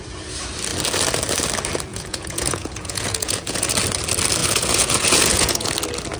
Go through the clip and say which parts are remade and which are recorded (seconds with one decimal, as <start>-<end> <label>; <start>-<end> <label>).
0.0-1.9 recorded; 1.9-3.7 remade; 3.7-4.4 recorded; 4.4-5.7 remade; 5.7-6.2 recorded

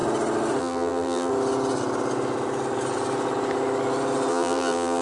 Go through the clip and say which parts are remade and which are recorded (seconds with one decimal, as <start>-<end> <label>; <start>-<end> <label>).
0.0-0.6 recorded; 0.6-1.3 remade; 1.3-4.3 recorded; 4.3-5.0 remade

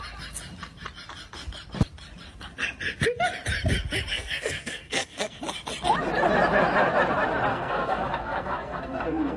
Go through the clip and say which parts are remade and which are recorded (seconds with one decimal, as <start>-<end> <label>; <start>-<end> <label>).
0.0-4.1 recorded; 4.1-5.4 remade; 5.4-7.5 recorded; 7.5-9.4 remade